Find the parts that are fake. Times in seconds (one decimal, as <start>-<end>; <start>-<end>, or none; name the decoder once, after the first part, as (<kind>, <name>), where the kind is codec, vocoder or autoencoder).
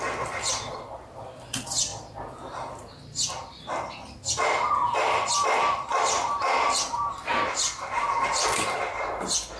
0.0-1.9 (vocoder, BigVGAN v2); 4.3-4.8; 5.6-9.6